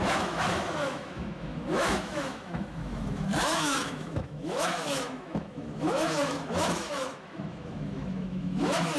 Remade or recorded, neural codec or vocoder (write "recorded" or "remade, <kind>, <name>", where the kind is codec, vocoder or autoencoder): remade, autoencoder, DAC-VAE